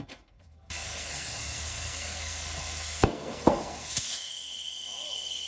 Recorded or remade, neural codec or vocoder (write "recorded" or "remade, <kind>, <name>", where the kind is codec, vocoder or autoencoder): remade, codec, SNAC